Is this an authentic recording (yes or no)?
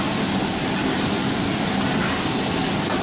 yes